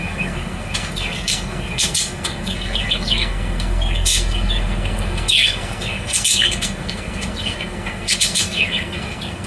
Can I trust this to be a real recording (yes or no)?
no